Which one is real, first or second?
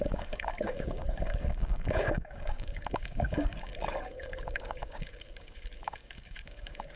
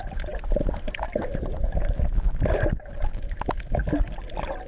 second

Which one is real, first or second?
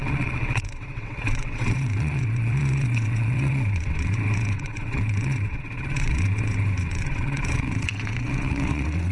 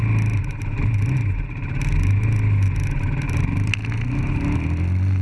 second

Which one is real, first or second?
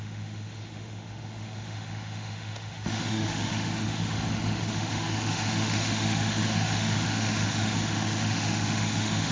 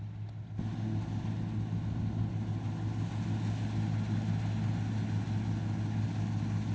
second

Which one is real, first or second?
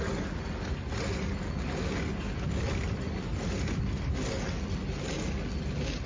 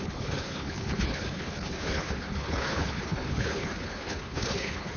first